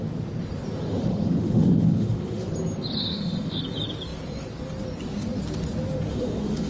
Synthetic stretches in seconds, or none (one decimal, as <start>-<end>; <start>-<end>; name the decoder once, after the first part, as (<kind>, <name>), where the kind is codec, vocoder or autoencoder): 0.9-2.5 (autoencoder, DAC-VAE); 3.0-3.6; 6.1-6.7